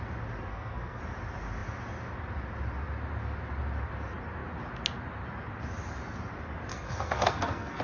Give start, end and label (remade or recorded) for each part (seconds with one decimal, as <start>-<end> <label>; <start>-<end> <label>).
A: 0.0-0.5 recorded; 0.5-1.0 remade; 1.0-6.7 recorded; 6.7-7.8 remade